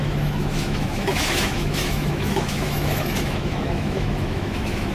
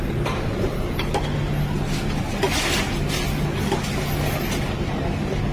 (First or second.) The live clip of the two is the second